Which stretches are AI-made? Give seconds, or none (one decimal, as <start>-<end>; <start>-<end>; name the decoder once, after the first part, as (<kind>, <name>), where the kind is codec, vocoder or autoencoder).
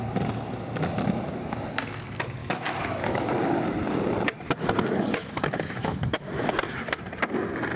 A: 2.4-3.3 (autoencoder, DAC-VAE); 5.2-6.4